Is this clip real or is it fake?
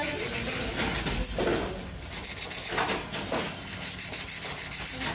real